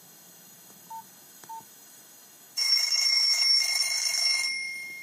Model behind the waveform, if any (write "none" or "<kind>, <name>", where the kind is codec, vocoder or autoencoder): autoencoder, DAC-VAE